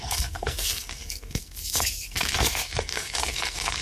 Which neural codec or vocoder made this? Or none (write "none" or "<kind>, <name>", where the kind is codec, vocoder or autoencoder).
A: codec, SNAC